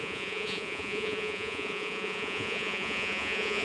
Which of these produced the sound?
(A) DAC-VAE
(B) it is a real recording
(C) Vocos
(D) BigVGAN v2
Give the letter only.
C